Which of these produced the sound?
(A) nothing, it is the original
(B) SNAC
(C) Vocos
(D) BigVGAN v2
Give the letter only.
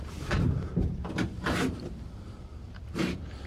D